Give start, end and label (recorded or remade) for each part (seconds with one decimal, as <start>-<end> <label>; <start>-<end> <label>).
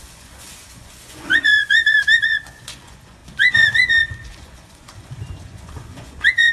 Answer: 0.0-6.5 remade